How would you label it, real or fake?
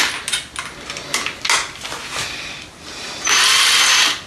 real